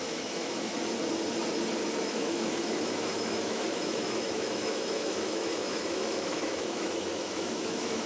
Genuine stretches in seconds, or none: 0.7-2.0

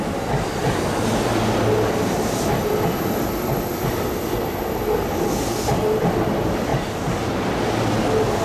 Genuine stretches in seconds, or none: 0.0-8.4

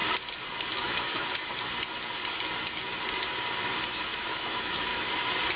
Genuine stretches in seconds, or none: 0.0-0.8; 1.5-4.2; 4.9-5.6

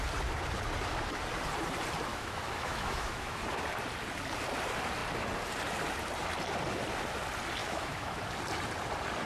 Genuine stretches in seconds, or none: 0.0-2.1; 3.4-7.6; 8.2-9.3

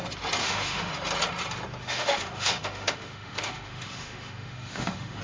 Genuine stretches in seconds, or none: 0.0-0.4; 0.9-1.8

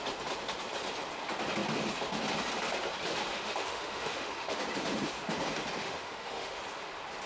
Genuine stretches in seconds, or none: 0.0-3.3; 4.6-5.8; 6.6-7.3